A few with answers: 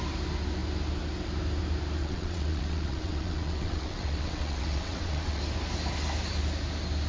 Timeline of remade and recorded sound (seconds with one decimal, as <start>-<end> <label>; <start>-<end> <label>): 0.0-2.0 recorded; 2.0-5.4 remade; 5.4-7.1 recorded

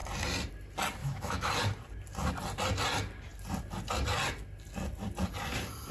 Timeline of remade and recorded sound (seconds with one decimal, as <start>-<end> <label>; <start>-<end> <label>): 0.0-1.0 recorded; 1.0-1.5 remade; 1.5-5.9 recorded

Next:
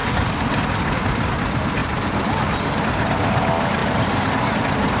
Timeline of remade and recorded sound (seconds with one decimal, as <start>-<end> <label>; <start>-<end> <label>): 0.0-1.8 recorded; 1.8-2.8 remade; 2.8-3.8 recorded; 3.8-4.3 remade; 4.3-5.0 recorded

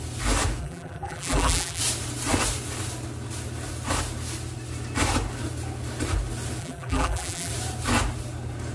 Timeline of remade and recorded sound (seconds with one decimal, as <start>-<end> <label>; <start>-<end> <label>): 0.0-0.6 recorded; 0.6-1.8 remade; 1.8-6.6 recorded; 6.6-7.5 remade; 7.5-8.7 recorded

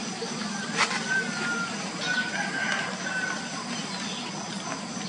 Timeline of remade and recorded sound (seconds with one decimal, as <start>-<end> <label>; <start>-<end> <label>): 0.0-5.1 recorded

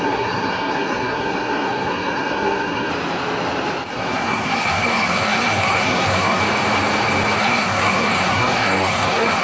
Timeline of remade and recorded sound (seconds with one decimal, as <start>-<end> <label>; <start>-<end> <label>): 0.0-2.9 remade; 2.9-3.9 recorded; 3.9-6.4 remade; 6.4-7.4 recorded; 7.4-9.4 remade